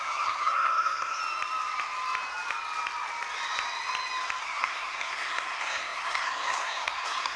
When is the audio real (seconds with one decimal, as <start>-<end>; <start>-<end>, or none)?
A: 1.2-4.4